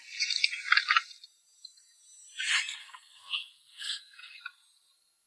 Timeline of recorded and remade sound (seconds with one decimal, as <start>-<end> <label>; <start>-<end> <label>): 0.0-2.8 recorded; 2.8-4.4 remade; 4.4-5.3 recorded